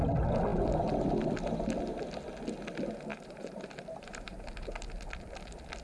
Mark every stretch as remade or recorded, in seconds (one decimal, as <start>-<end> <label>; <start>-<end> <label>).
0.0-3.1 recorded; 3.1-4.7 remade; 4.7-5.8 recorded